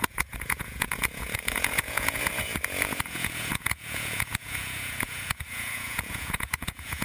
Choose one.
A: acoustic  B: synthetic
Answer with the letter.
B